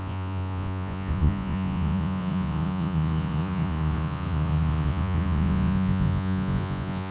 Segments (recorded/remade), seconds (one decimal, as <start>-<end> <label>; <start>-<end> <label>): 0.0-7.1 remade